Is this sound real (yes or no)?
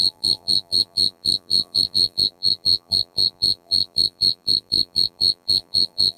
no